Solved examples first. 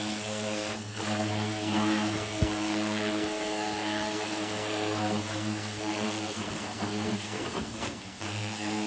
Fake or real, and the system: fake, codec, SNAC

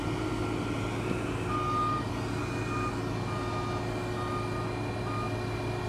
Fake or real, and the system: real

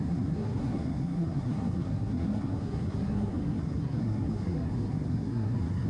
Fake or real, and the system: fake, codec, SNAC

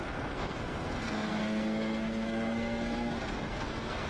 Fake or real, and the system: fake, codec, SNAC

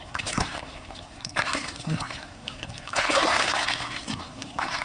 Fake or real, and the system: fake, codec, SNAC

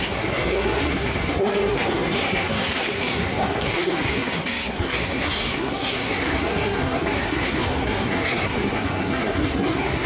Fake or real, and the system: fake, codec, SNAC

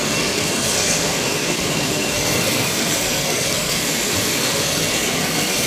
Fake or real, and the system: fake, codec, SNAC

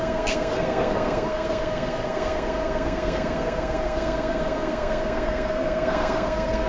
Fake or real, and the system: fake, codec, SNAC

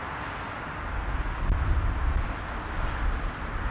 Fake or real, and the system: real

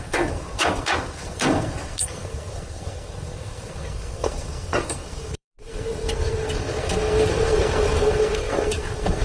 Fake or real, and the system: fake, codec, SNAC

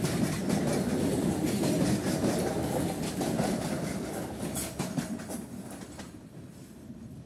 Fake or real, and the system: real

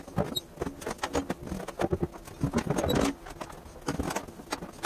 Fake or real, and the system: real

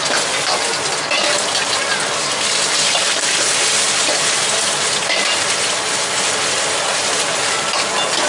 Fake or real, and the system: real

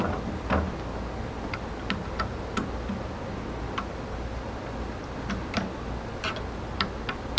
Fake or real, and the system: real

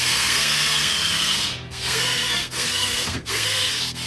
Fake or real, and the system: fake, codec, SNAC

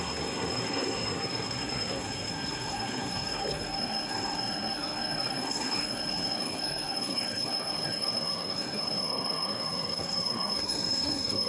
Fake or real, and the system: fake, codec, SNAC